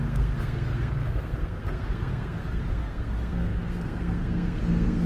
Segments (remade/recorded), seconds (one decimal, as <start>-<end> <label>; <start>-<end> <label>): 0.0-5.1 remade